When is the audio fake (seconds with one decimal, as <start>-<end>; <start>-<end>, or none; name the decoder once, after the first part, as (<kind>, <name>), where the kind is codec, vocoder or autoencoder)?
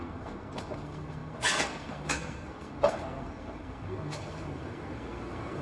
0.0-5.6 (codec, SNAC)